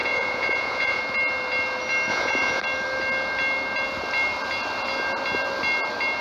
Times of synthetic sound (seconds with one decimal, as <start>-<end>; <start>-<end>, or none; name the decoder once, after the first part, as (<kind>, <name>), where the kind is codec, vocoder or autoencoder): 0.0-1.0 (vocoder, Vocos); 2.1-2.6